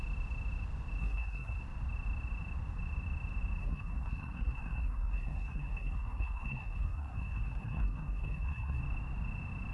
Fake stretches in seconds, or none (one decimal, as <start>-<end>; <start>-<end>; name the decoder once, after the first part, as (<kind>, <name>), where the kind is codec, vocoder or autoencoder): 1.0-1.6 (codec, SNAC); 3.6-8.8